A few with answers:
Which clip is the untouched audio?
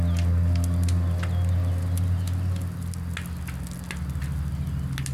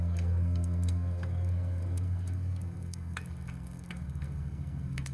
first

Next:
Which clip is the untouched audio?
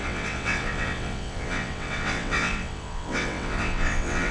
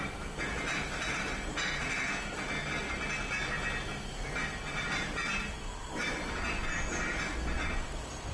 second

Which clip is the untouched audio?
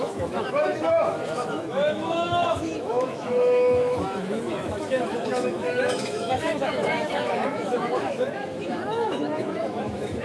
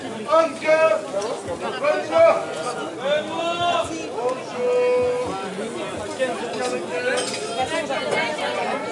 second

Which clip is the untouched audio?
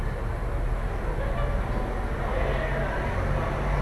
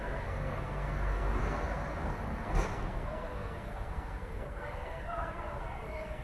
first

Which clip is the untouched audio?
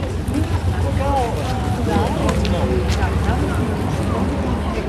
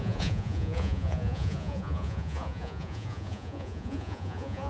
first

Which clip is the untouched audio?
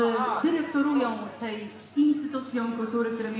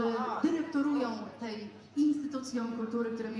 first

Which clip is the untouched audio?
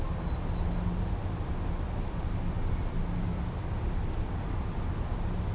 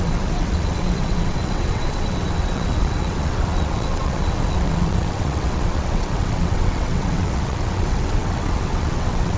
first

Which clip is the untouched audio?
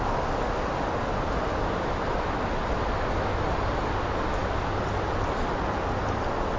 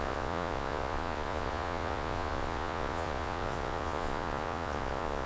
first